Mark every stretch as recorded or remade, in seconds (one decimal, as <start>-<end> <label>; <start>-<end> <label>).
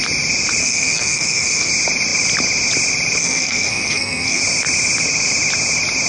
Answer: 0.0-0.6 recorded; 0.6-1.7 remade; 1.7-3.2 recorded; 3.2-4.4 remade; 4.4-6.1 recorded